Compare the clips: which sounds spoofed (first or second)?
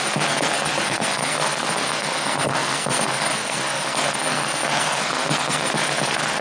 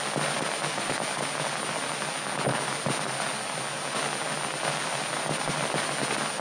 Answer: first